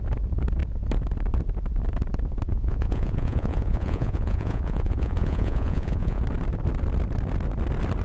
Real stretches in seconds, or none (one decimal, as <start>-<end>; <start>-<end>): 0.0-2.5; 6.2-8.0